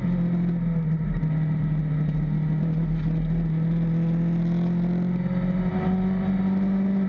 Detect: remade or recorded recorded